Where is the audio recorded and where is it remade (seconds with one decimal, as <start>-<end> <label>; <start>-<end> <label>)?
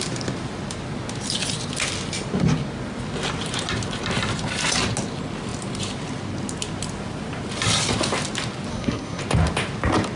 0.0-8.7 recorded; 8.7-9.2 remade; 9.2-10.2 recorded